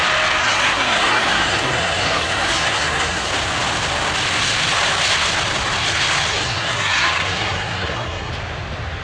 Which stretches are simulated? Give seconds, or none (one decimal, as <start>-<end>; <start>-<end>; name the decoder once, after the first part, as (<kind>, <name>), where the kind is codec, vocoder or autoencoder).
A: 0.4-3.3 (codec, SNAC); 6.3-8.3